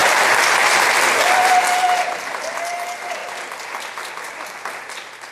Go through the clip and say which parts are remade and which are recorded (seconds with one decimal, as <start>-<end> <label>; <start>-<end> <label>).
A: 0.0-5.3 recorded